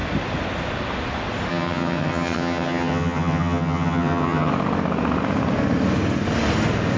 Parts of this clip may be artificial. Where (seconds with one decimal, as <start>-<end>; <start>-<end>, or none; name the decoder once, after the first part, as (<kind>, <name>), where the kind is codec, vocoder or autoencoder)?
1.5-4.5 (vocoder, HiFi-GAN)